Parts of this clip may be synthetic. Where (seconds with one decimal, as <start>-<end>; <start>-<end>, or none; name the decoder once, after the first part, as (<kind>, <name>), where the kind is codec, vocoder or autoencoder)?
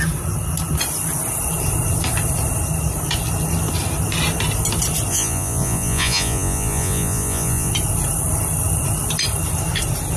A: 5.1-7.7 (vocoder, Vocos)